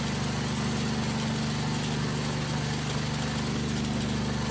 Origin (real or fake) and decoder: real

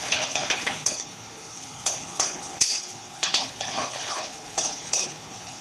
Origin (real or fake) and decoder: fake, codec, HILCodec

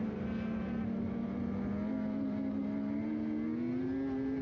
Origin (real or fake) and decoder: real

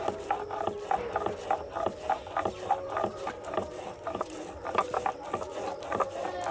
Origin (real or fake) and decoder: real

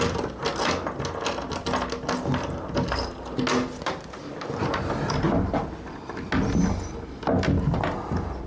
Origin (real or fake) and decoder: real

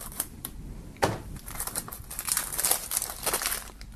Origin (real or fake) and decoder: fake, vocoder, BigVGAN v2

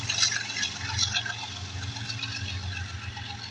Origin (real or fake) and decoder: real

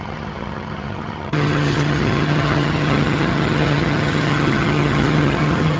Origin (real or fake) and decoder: fake, vocoder, HiFi-GAN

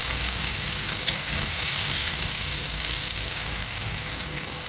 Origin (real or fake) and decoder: fake, codec, DAC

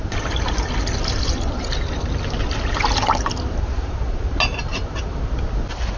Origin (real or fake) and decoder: real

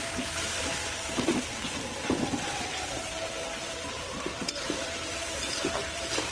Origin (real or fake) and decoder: fake, vocoder, BigVGAN v2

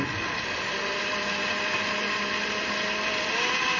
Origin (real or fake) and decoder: real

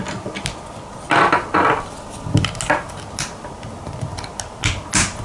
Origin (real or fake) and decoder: real